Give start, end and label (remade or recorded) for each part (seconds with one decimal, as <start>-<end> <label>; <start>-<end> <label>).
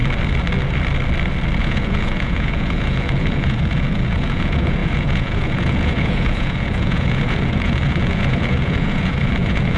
0.0-1.6 recorded; 1.6-9.8 remade